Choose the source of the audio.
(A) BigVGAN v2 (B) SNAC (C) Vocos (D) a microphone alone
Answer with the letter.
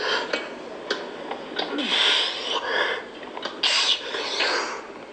D